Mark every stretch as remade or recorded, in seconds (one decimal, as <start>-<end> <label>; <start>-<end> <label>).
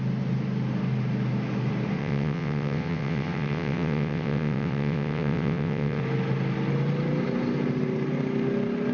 0.0-2.0 recorded; 2.0-6.0 remade; 6.0-8.9 recorded